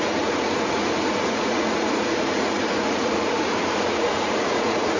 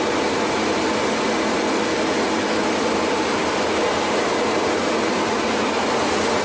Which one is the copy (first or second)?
first